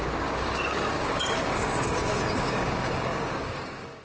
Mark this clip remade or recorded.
remade